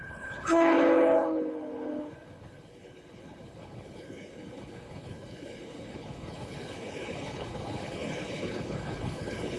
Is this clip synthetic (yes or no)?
yes